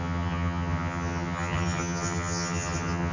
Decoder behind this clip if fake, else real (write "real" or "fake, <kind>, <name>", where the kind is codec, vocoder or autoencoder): fake, vocoder, HiFi-GAN